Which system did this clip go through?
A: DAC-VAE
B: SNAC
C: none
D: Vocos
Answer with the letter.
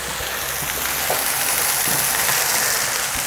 C